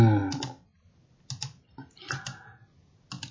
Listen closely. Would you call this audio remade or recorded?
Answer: recorded